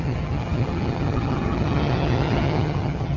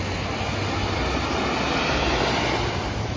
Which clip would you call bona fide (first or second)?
second